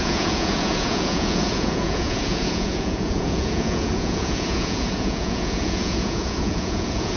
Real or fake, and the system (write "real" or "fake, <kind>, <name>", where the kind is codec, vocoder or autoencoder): fake, vocoder, Vocos